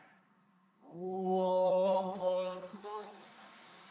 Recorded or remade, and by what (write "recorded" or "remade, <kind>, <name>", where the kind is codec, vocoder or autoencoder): remade, codec, SNAC